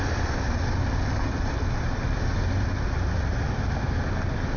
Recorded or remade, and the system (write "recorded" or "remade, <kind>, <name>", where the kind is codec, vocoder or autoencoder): recorded